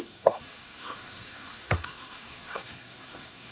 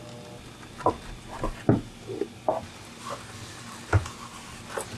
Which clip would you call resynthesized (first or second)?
first